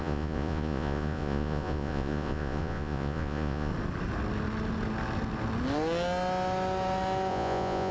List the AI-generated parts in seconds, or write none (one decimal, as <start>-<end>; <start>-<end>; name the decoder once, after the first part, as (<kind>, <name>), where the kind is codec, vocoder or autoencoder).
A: 0.0-3.7 (vocoder, Vocos); 7.3-7.9

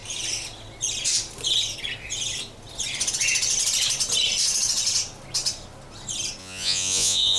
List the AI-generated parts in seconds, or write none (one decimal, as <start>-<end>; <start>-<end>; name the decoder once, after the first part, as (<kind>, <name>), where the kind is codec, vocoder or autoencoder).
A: 6.4-7.4 (vocoder, Vocos)

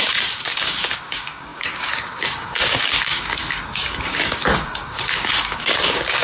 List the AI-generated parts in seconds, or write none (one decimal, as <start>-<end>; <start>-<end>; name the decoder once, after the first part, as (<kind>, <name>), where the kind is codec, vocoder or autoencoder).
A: 0.0-6.2 (codec, DAC)